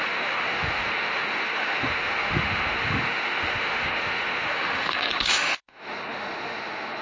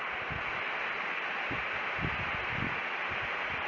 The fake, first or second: first